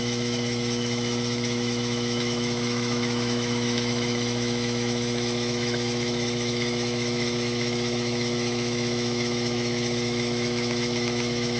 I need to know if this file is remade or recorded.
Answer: remade